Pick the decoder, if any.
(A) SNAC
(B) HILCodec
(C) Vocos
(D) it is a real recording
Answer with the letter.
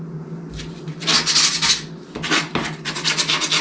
D